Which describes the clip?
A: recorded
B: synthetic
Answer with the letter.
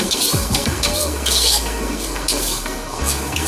B